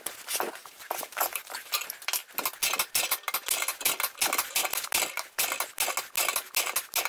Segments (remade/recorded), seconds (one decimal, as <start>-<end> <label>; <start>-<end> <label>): 0.0-0.6 recorded; 0.6-1.7 remade; 1.7-7.1 recorded